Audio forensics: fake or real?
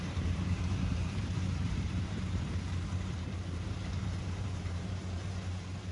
fake